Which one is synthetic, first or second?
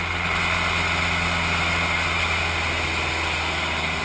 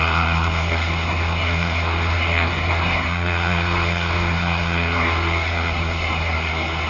second